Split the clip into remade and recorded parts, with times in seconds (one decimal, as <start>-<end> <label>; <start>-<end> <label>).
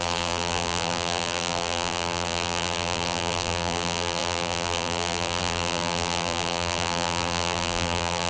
0.0-8.3 remade